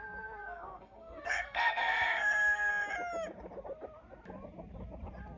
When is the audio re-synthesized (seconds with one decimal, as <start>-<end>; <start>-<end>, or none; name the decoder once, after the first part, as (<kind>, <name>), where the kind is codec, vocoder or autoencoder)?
0.4-2.7 (codec, SNAC)